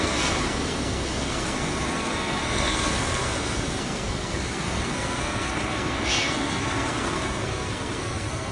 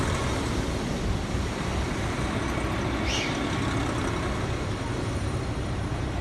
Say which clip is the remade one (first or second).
first